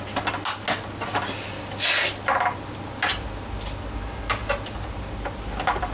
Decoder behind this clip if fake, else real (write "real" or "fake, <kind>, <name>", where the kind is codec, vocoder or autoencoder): real